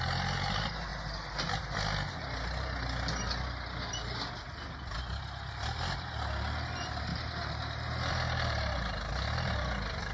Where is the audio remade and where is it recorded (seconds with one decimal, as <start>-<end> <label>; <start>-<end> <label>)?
0.0-10.1 recorded